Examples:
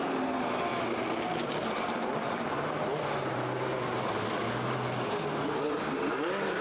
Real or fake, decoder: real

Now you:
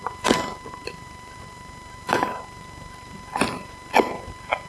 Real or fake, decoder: fake, vocoder, BigVGAN v2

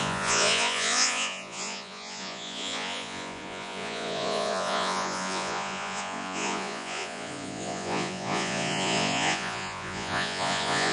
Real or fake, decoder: fake, vocoder, Vocos